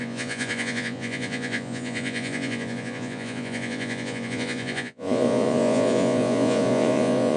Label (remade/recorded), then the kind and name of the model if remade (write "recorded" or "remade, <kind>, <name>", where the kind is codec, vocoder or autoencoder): remade, vocoder, Vocos